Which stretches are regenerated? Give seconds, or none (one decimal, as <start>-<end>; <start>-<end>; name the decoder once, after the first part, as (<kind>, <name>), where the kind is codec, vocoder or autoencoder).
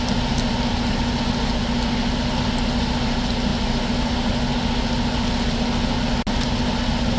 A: none